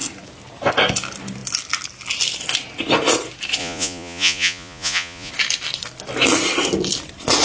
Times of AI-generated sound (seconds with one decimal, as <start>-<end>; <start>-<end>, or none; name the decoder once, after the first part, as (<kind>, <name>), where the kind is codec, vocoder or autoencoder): 3.6-5.3 (vocoder, Vocos)